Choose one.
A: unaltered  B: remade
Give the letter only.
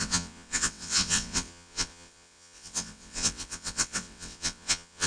B